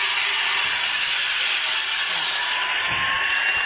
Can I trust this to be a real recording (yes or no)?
yes